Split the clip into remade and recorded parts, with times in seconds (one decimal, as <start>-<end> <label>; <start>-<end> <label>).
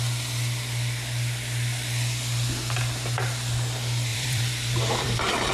0.0-4.1 recorded; 4.1-5.5 remade